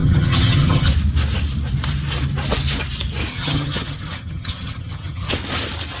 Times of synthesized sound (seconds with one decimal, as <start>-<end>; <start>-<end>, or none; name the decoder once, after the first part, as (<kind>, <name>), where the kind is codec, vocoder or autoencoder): 0.0-0.9 (vocoder, HiFi-GAN); 3.3-5.3